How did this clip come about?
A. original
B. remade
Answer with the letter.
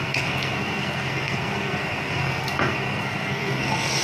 B